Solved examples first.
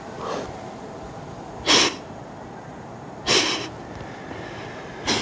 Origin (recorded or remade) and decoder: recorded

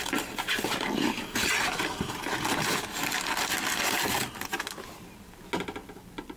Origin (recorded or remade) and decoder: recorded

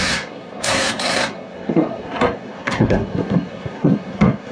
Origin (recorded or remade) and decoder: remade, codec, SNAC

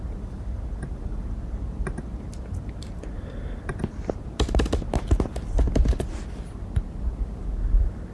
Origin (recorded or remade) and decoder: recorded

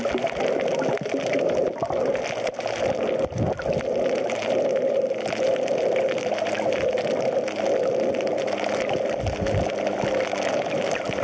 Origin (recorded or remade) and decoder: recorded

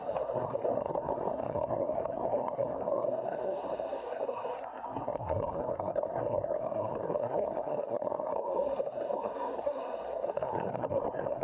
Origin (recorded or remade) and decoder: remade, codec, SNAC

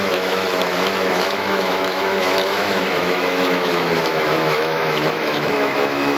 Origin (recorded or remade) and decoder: remade, autoencoder, DAC-VAE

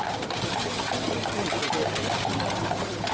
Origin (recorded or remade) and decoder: recorded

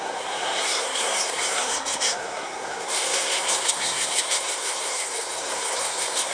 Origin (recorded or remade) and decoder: remade, codec, SNAC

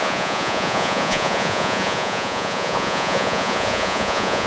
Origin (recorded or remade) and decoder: remade, vocoder, Vocos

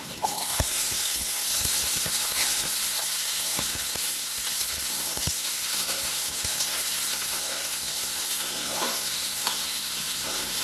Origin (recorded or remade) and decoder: remade, codec, SNAC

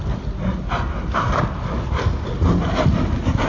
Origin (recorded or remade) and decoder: recorded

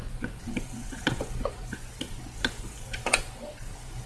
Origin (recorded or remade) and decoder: remade, vocoder, Vocos